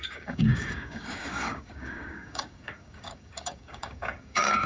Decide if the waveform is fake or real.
fake